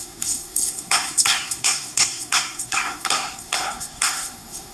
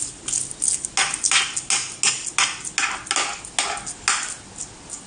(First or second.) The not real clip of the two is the first